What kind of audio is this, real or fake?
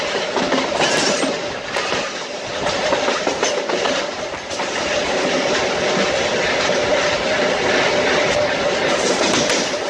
real